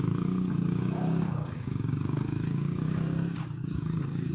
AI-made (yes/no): yes